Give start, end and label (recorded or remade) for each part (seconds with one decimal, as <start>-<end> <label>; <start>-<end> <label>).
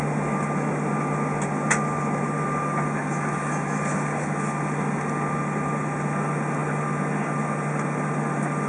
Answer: 0.0-8.7 recorded